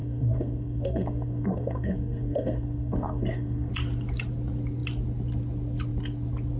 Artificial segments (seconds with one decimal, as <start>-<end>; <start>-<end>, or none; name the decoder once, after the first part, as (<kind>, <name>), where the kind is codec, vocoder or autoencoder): 0.0-3.7 (codec, SNAC)